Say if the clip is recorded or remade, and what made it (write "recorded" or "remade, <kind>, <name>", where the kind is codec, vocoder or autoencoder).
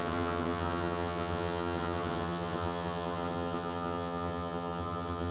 remade, vocoder, HiFi-GAN